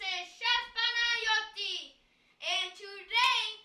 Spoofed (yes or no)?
no